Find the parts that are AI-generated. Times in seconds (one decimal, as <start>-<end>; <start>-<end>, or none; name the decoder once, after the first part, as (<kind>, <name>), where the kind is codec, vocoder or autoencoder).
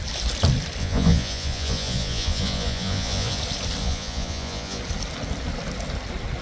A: 0.8-3.4 (vocoder, Vocos); 3.8-4.8